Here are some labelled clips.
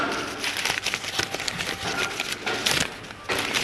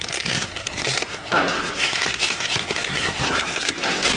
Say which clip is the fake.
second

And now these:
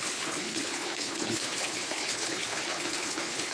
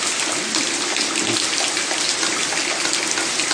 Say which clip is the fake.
first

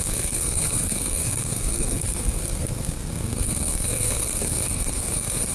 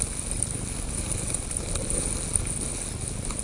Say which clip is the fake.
first